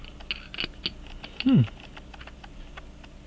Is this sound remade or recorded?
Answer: recorded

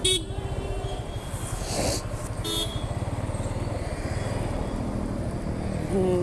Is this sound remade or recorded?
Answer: recorded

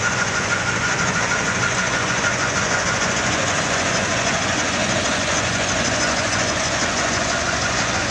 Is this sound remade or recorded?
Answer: remade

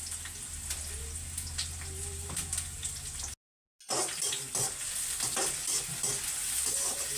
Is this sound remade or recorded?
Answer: recorded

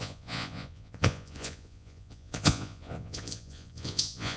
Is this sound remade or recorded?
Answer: remade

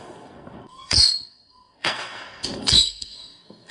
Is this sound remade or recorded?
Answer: remade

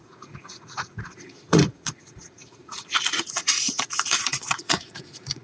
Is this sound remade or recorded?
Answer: remade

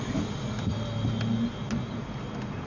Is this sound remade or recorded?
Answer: recorded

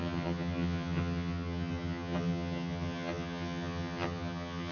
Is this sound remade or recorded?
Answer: remade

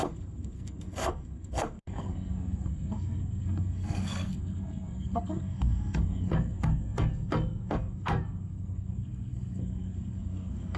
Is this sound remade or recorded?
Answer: remade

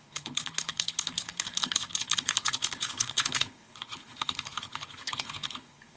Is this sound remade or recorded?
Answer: remade